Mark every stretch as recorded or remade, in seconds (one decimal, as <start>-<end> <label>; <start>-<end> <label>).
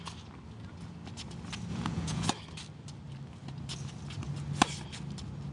0.0-1.7 recorded; 1.7-2.3 remade; 2.3-5.5 recorded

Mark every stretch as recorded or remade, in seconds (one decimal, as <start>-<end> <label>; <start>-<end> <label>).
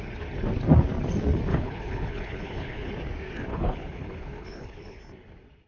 0.0-1.5 recorded; 1.5-2.9 remade; 2.9-3.5 recorded; 3.5-5.0 remade; 5.0-5.7 recorded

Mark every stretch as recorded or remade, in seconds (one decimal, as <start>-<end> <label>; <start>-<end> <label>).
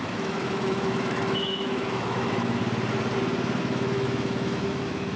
0.0-2.6 remade; 2.6-3.6 recorded; 3.6-5.2 remade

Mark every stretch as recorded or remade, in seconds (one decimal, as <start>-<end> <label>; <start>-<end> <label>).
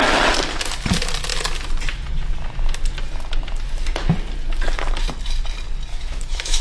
0.0-5.9 recorded; 5.9-6.6 remade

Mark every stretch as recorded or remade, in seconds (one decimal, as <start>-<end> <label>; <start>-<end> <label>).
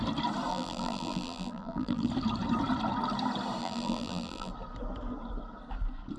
0.0-0.5 recorded; 0.5-2.1 remade; 2.1-3.6 recorded; 3.6-4.5 remade; 4.5-6.2 recorded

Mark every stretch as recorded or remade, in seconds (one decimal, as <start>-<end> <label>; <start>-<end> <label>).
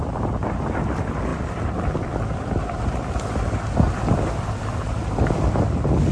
0.0-6.1 recorded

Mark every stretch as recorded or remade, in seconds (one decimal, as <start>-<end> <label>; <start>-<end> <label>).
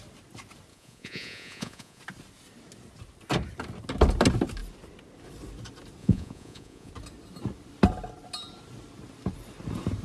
0.0-0.7 recorded; 0.7-2.0 remade; 2.0-6.0 recorded; 6.0-6.9 remade; 6.9-10.0 recorded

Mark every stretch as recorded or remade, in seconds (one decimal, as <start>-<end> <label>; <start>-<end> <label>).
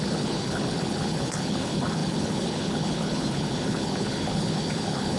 0.0-5.2 remade